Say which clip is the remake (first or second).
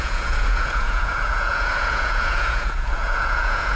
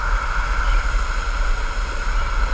first